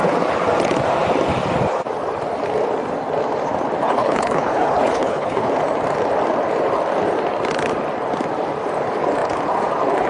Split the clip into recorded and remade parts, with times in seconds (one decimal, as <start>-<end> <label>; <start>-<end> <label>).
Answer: 0.0-3.8 recorded; 3.8-5.5 remade; 5.5-10.1 recorded